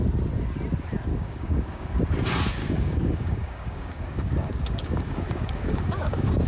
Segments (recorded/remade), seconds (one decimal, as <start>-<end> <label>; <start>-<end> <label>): 0.0-1.1 recorded; 1.1-2.0 remade; 2.0-2.6 recorded; 2.6-6.5 remade

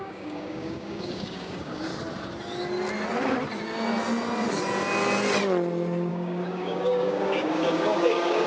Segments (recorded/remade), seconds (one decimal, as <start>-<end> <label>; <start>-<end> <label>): 0.0-1.9 remade; 1.9-6.1 recorded; 6.1-8.5 remade

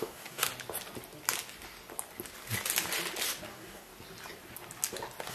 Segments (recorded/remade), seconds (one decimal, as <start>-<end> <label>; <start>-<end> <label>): 0.0-0.5 remade; 0.5-3.5 recorded; 3.5-3.9 remade; 3.9-5.3 recorded

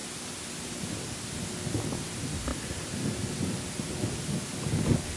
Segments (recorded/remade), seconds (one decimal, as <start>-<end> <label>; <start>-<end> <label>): 0.0-5.2 recorded

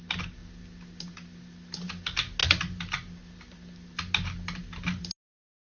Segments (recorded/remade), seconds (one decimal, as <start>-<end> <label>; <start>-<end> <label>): 0.0-5.6 recorded